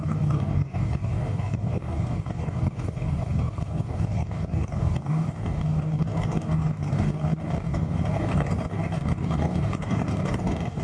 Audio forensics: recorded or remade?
remade